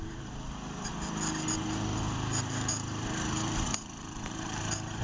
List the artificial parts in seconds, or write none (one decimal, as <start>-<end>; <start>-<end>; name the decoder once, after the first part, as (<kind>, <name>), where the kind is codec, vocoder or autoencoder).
0.0-0.9 (vocoder, BigVGAN v2); 1.5-5.0